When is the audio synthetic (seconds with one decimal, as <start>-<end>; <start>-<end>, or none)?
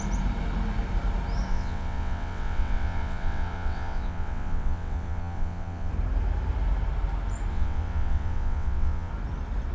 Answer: 1.5-5.9; 7.5-9.1